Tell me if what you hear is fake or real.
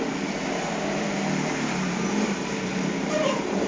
fake